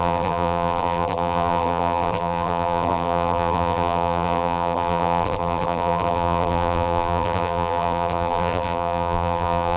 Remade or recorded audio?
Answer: remade